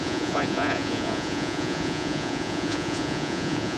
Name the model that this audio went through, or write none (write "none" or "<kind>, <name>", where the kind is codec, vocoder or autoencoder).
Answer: vocoder, Vocos